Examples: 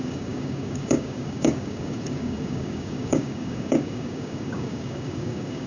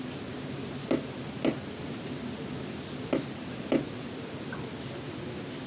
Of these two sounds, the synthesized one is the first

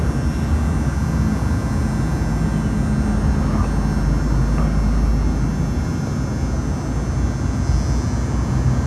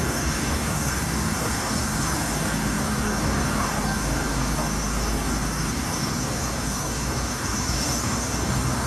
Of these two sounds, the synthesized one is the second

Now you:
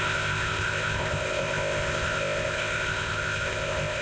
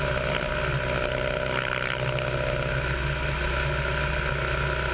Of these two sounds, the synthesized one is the first